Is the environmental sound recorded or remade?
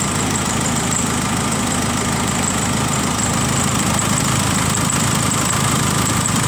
remade